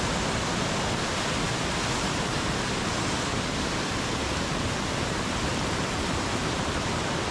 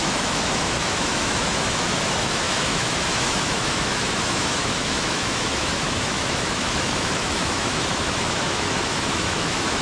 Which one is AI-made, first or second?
second